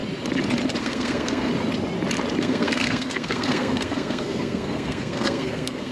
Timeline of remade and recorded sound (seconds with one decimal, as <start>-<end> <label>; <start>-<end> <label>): 0.0-0.8 recorded; 0.8-1.5 remade; 1.5-2.4 recorded; 2.4-5.9 remade